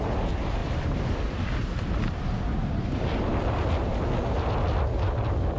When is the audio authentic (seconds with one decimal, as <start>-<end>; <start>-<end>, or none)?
0.0-0.6; 2.3-3.3; 3.9-5.6